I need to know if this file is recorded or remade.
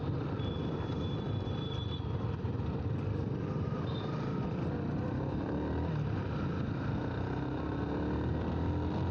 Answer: remade